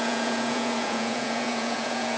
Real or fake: fake